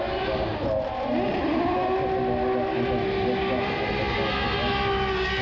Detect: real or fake real